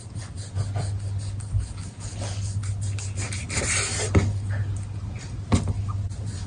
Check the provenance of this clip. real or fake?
real